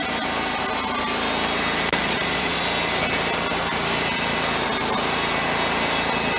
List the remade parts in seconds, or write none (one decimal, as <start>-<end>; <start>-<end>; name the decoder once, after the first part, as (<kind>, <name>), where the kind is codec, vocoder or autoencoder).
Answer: 2.0-2.6 (vocoder, Vocos)